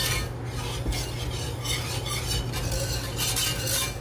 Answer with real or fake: real